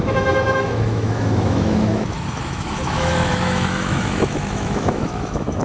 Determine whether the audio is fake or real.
fake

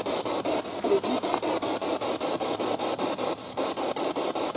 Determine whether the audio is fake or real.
real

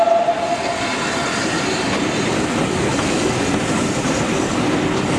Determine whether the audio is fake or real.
real